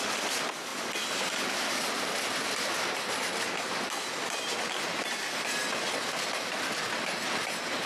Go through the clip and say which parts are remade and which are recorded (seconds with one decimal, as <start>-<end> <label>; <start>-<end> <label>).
0.0-7.9 recorded